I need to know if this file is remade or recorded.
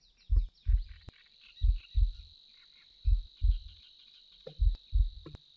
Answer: recorded